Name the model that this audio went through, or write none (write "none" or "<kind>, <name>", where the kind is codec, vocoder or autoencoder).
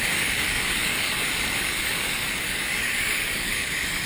codec, DAC